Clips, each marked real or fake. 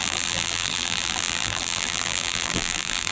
fake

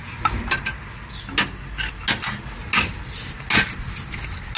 real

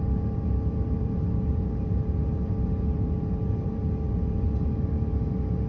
fake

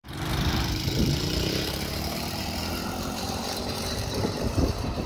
fake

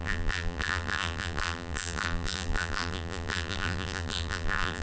fake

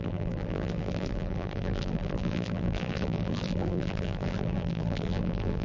fake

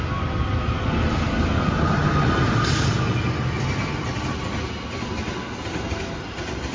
real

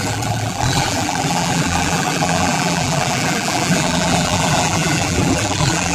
fake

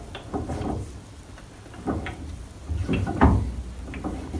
real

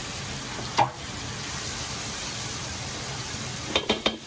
fake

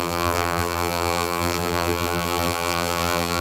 fake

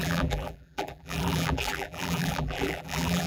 fake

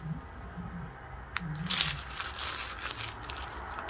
real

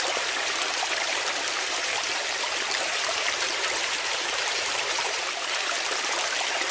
fake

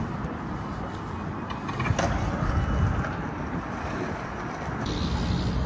real